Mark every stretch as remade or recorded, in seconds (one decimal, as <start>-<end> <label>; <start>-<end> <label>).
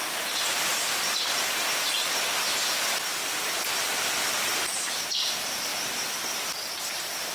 0.0-0.7 remade; 0.7-5.1 recorded; 5.1-7.3 remade